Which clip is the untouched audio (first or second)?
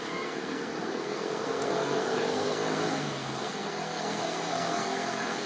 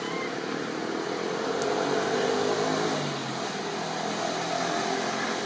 second